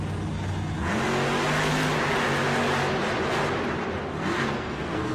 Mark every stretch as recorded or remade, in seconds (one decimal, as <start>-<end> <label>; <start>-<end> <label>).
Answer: 0.0-4.2 recorded; 4.2-5.1 remade